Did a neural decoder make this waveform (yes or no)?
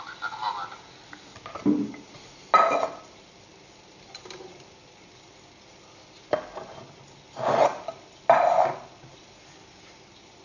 no